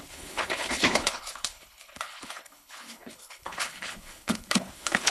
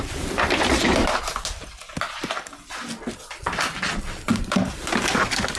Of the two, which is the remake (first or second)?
first